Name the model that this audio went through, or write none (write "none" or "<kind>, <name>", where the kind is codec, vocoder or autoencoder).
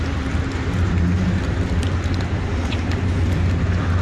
none